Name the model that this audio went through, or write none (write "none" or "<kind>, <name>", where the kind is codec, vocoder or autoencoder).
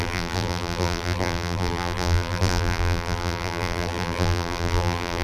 vocoder, BigVGAN v2